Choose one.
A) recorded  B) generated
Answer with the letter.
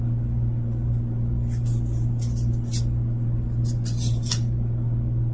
A